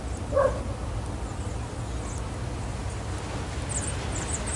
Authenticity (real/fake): real